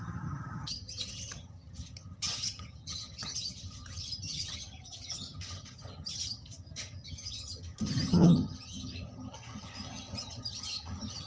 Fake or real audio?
fake